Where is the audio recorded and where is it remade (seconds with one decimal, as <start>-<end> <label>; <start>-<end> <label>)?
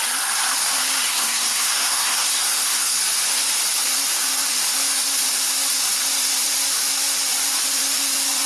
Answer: 0.0-1.1 recorded; 1.1-3.0 remade; 3.0-8.5 recorded